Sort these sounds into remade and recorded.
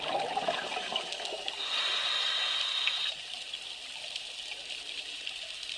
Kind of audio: recorded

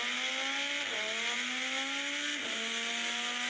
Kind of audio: recorded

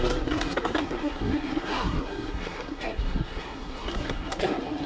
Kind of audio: remade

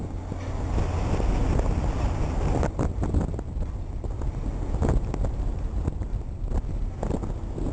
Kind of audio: recorded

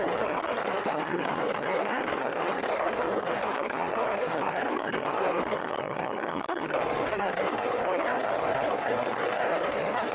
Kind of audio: remade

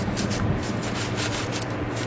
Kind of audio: recorded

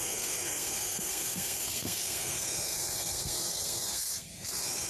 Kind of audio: remade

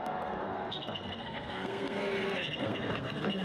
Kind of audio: remade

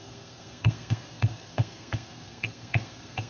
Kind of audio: remade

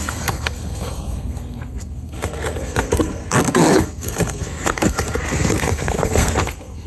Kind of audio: remade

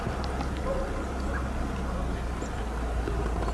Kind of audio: recorded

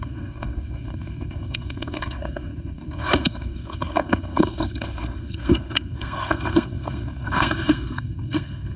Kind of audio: remade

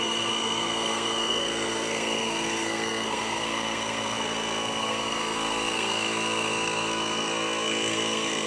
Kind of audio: remade